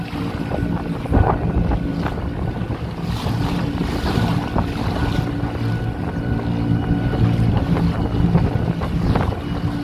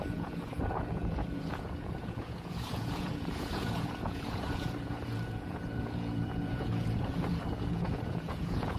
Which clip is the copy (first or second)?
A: second